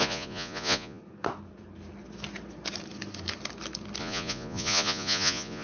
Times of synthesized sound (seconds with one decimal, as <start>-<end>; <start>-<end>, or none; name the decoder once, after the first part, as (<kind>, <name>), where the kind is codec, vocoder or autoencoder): 0.0-1.0 (vocoder, Vocos); 4.0-5.6